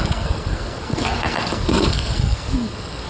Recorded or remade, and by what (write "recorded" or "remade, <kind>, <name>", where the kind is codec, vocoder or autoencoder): remade, codec, SNAC